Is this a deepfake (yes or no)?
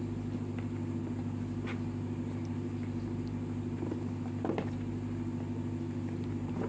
no